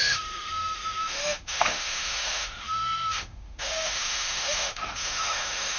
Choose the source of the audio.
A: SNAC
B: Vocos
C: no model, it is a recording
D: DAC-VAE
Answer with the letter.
D